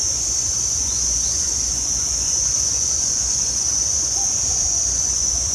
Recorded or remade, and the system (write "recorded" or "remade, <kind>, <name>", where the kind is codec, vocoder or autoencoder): remade, vocoder, Vocos